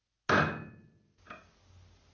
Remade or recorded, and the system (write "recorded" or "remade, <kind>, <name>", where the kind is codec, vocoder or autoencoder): recorded